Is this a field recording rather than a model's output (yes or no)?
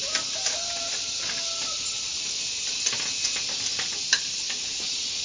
yes